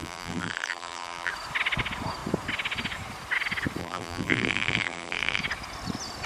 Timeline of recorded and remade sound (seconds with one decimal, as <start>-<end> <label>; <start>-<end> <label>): 0.0-1.3 remade; 1.3-3.8 recorded; 3.8-5.4 remade; 5.4-6.3 recorded